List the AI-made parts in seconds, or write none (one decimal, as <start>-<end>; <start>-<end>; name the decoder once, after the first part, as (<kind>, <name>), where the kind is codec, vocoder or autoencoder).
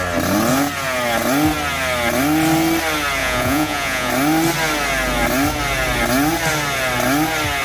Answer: 3.2-4.1 (vocoder, Vocos)